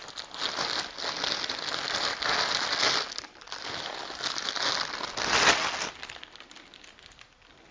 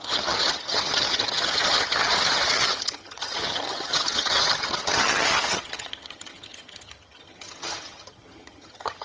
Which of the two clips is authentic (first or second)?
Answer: first